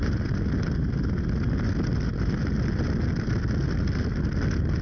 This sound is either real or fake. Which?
real